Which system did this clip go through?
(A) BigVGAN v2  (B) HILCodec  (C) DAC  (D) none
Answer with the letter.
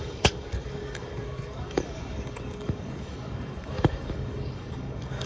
C